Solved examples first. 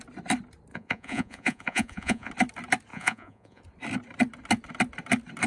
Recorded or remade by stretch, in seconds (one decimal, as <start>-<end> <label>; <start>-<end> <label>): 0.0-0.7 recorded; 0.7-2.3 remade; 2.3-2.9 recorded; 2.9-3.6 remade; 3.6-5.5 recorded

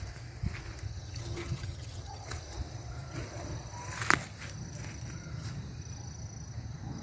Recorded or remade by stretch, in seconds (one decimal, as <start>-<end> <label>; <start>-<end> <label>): 0.0-0.9 recorded; 0.9-2.4 remade; 2.4-7.0 recorded

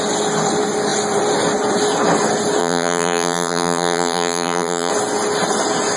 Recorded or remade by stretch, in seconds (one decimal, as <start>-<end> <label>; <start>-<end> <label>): 0.0-2.6 recorded; 2.6-4.9 remade; 4.9-6.0 recorded

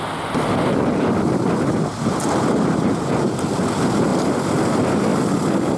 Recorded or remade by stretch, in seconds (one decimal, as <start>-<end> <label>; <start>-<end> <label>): 0.0-4.1 recorded; 4.1-4.6 remade; 4.6-5.1 recorded; 5.1-5.8 remade